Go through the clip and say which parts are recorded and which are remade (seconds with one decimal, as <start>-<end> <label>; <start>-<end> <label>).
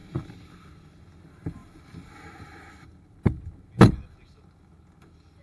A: 0.0-5.4 recorded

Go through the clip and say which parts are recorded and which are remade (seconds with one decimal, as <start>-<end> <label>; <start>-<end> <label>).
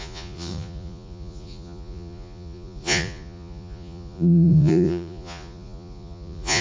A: 0.0-6.6 remade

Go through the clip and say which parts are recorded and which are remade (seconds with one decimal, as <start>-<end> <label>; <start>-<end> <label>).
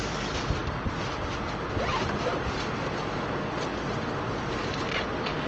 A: 0.0-5.5 recorded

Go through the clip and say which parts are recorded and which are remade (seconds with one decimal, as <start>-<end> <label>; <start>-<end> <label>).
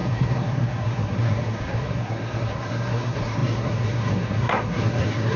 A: 0.0-5.4 remade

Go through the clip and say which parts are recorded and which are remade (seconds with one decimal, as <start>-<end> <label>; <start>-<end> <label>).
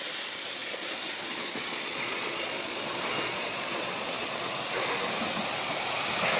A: 0.0-0.6 recorded; 0.6-4.4 remade; 4.4-6.4 recorded